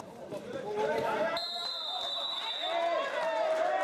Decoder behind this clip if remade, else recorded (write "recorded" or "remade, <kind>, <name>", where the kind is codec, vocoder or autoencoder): remade, vocoder, BigVGAN v2